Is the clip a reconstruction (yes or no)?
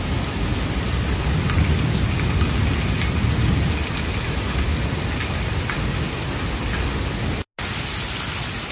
no